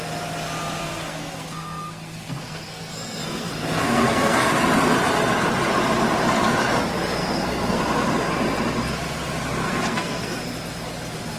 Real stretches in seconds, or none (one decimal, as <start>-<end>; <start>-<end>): 0.0-0.8; 4.5-7.2; 7.8-9.6; 10.4-11.4